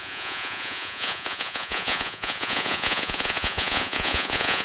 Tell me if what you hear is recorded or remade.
remade